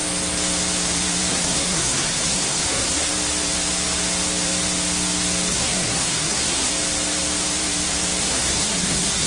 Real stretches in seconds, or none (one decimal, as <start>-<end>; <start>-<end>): 0.0-1.3; 3.1-5.5; 6.7-8.2